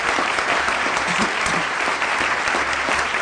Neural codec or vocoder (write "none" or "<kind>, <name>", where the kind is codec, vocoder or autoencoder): vocoder, BigVGAN v2